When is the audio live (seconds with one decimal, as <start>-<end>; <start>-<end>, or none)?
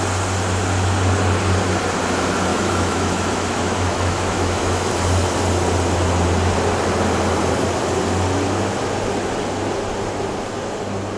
0.0-2.5; 4.9-11.2